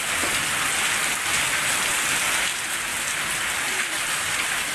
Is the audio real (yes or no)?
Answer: yes